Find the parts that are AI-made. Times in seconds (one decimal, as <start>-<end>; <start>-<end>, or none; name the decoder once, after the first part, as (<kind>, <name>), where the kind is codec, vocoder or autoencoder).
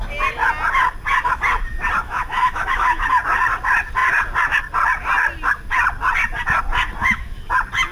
2.0-3.0 (autoencoder, DAC-VAE); 7.0-7.5